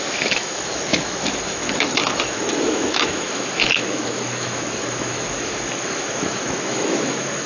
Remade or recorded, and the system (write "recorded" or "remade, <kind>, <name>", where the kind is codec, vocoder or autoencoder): remade, autoencoder, DAC-VAE